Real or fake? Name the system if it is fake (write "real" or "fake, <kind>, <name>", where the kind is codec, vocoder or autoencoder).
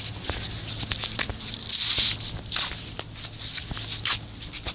real